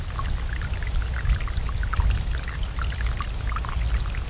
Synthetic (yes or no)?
no